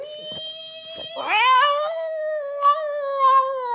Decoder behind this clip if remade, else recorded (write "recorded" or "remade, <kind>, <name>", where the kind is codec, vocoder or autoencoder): recorded